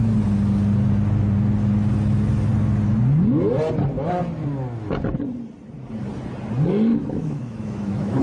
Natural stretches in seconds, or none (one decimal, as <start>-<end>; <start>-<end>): 0.0-6.9